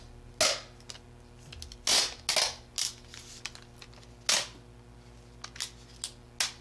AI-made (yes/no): no